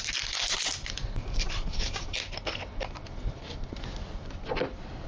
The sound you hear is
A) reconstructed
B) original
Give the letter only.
B